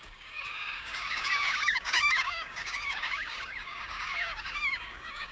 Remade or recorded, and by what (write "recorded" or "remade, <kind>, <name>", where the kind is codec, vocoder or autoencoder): remade, codec, DAC